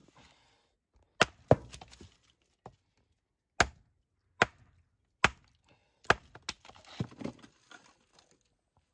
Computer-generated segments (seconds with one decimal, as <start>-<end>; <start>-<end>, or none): none